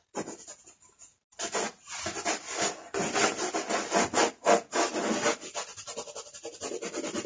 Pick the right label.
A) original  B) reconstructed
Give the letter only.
A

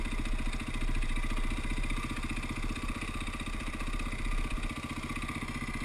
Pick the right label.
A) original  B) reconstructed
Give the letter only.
A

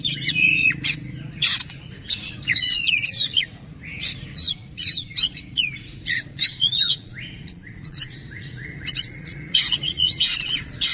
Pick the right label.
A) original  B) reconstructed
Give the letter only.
B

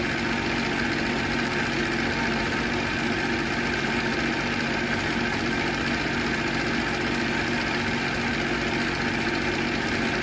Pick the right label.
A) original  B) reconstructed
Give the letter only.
A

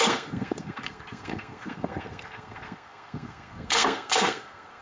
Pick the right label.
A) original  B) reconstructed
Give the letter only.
B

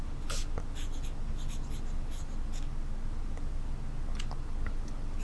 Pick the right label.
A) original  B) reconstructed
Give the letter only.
A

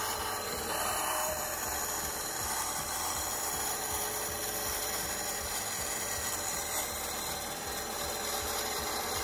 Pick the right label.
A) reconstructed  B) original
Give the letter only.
A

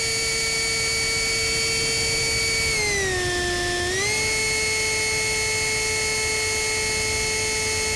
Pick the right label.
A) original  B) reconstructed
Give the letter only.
A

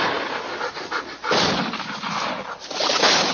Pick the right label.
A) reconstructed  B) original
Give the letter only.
A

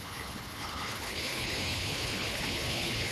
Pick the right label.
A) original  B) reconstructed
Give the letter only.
B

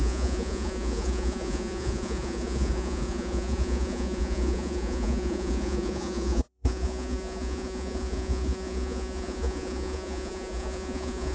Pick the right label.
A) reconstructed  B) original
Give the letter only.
A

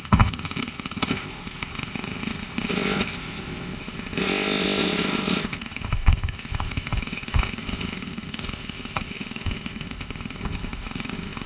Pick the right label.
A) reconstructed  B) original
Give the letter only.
A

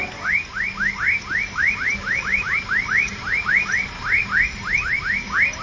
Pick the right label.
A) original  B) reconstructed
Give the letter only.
A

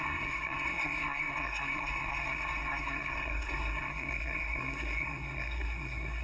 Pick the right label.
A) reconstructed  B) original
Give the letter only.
A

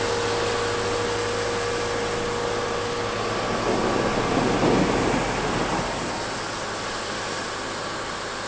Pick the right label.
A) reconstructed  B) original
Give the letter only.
B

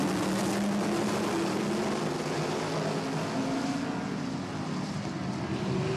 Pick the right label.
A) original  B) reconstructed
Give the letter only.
A